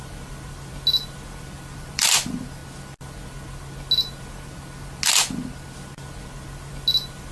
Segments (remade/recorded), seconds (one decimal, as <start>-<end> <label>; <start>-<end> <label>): 0.0-2.6 remade; 2.6-6.7 recorded; 6.7-7.3 remade